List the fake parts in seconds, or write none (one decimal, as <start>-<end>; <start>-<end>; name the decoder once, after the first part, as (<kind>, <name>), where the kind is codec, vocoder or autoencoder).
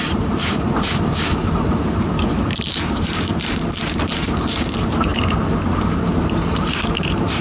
0.0-5.1 (vocoder, BigVGAN v2); 6.0-7.4